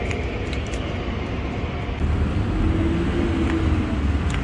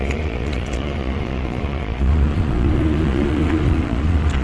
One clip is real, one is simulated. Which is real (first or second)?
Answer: first